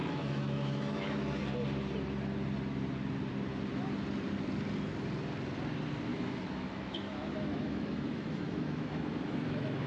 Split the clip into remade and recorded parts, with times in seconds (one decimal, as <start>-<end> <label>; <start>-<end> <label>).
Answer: 0.0-1.4 remade; 1.4-6.1 recorded; 6.1-9.9 remade